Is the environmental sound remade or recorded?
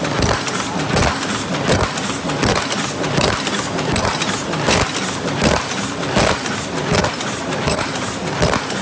remade